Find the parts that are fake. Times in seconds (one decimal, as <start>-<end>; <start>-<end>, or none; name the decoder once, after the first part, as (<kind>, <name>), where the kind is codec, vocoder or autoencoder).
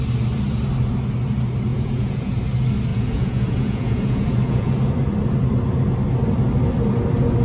1.7-2.3 (vocoder, Vocos); 2.9-4.7